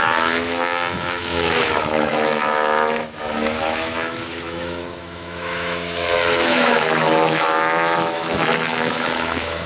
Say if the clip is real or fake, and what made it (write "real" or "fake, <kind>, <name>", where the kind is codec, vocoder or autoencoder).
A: fake, autoencoder, DAC-VAE